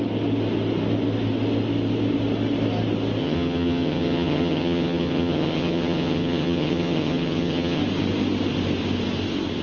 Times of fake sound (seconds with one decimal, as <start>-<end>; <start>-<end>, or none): 3.2-7.8